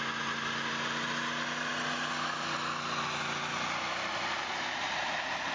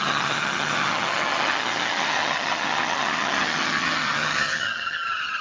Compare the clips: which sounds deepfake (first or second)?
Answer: second